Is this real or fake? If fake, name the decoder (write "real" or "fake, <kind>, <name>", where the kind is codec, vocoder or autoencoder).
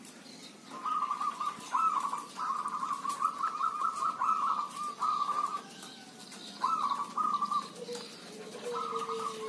real